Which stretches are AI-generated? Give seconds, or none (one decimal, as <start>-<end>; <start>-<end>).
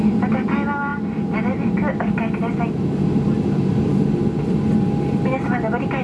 none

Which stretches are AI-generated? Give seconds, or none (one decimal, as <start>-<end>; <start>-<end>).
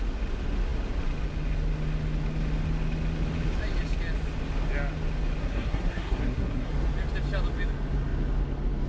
5.4-6.7